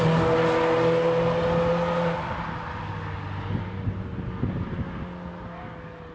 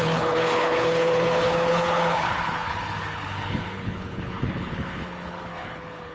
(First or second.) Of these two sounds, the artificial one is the second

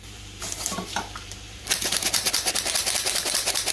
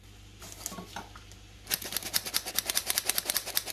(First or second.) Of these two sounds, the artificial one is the first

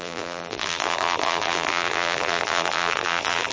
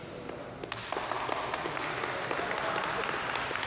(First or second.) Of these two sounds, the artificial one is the first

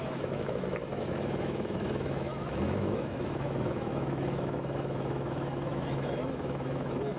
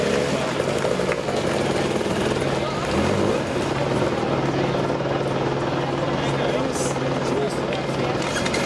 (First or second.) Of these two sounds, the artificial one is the first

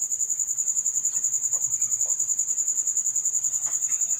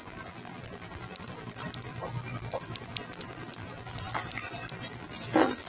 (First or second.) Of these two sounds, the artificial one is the second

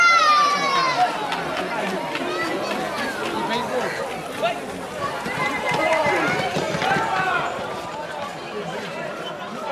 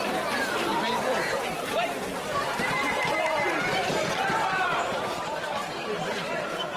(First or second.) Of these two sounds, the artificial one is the second